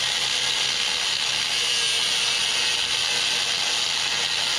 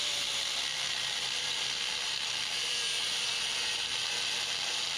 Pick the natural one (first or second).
first